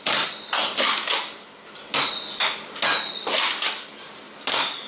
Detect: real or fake real